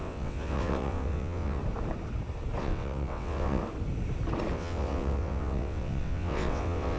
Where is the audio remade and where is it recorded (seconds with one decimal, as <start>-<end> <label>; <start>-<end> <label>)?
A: 0.0-1.6 remade; 1.6-2.6 recorded; 2.6-3.6 remade; 3.6-4.5 recorded; 4.5-7.0 remade